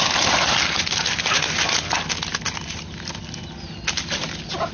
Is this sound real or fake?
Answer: real